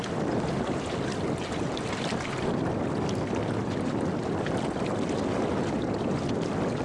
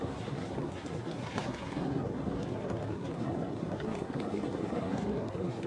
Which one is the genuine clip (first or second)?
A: first